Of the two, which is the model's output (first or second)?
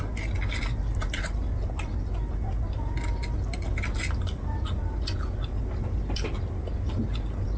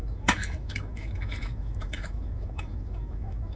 second